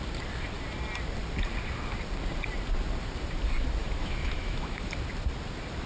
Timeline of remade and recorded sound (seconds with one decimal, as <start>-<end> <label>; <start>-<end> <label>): 0.0-3.8 recorded; 3.8-4.9 remade; 4.9-5.9 recorded